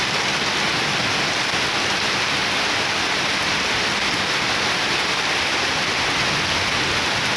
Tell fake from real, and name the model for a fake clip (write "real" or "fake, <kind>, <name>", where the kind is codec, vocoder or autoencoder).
real